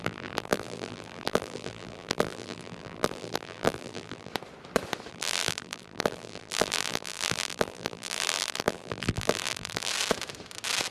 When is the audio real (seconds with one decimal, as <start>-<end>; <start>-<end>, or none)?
4.3-5.1; 9.9-10.9